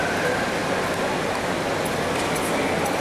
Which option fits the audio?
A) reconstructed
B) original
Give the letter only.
B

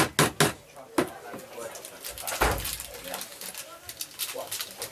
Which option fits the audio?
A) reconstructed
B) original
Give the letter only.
B